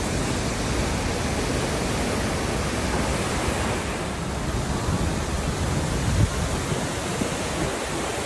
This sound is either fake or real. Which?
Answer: real